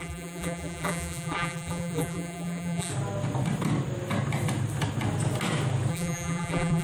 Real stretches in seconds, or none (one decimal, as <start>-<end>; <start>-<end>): 2.9-5.9